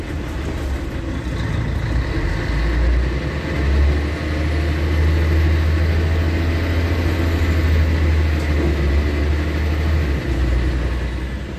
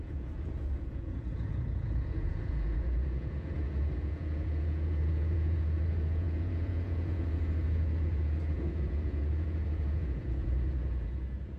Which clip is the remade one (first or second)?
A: second